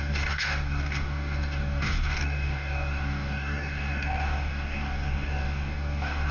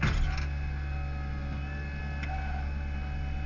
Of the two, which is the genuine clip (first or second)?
second